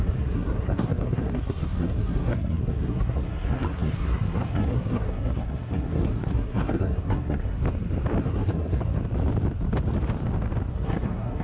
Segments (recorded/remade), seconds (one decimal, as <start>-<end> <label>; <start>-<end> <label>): 0.0-7.6 remade; 7.6-8.2 recorded; 8.2-9.0 remade; 9.0-10.7 recorded; 10.7-11.4 remade

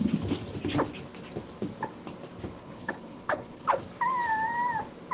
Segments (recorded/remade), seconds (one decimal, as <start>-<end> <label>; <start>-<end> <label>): 0.0-2.6 recorded; 2.6-3.8 remade; 3.8-5.1 recorded

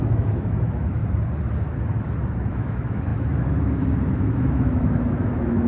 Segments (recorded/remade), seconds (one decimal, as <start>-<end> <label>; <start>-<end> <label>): 0.0-1.0 remade; 1.0-2.5 recorded; 2.5-5.7 remade